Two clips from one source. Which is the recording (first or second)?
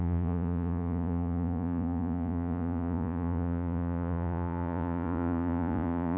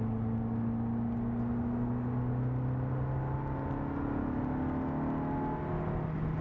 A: second